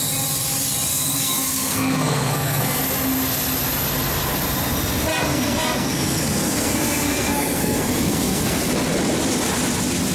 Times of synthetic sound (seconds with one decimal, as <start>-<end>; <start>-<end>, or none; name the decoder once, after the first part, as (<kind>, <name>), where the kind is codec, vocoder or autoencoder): 0.9-2.8 (codec, SNAC); 5.1-8.7